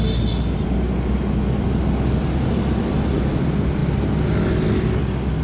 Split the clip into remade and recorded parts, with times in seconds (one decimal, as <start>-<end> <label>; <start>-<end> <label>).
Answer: 0.0-5.4 recorded